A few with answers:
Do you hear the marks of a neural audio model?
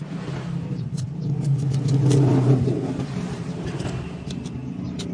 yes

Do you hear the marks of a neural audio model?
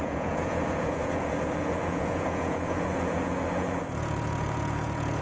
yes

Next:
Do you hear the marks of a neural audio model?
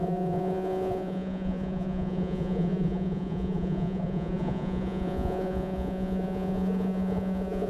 yes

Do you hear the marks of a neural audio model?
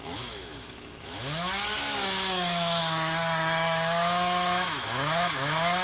yes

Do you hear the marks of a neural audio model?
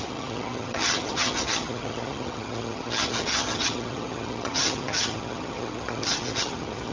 yes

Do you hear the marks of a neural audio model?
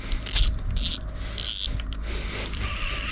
no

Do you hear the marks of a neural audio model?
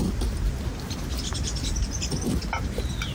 no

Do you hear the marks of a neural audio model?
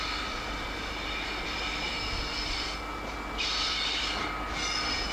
no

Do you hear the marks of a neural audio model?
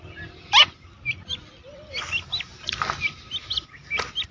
no